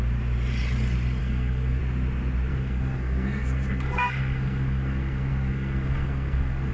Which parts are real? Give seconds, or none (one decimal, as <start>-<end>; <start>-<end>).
0.0-1.2; 1.8-2.5